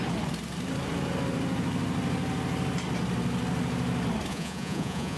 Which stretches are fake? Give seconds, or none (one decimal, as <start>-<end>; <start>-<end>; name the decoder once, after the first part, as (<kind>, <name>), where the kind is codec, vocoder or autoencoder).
4.3-5.2 (vocoder, Vocos)